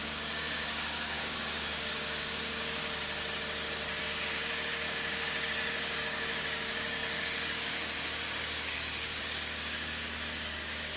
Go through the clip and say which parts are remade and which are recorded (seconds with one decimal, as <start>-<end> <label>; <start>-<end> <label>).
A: 0.0-2.8 remade; 2.8-4.0 recorded; 4.0-11.0 remade